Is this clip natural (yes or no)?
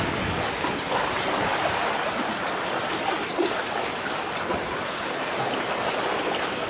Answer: yes